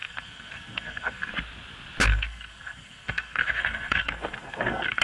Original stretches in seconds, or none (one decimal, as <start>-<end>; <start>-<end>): 1.3-2.0